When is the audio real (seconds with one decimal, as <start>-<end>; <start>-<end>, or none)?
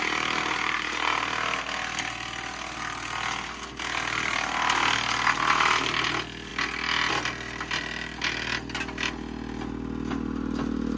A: 0.0-11.0